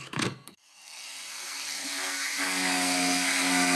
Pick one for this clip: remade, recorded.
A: remade